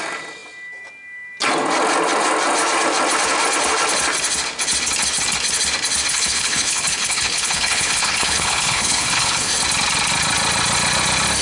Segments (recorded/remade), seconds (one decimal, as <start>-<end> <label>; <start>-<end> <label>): 0.0-6.1 recorded; 6.1-9.5 remade; 9.5-11.4 recorded